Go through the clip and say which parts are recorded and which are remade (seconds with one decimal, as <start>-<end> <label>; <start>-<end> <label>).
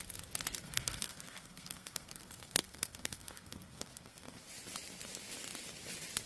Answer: 0.0-0.6 recorded; 0.6-4.4 remade; 4.4-6.3 recorded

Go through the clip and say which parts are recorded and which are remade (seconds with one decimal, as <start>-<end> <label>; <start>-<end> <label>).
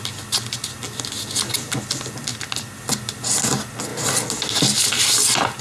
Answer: 0.0-5.6 recorded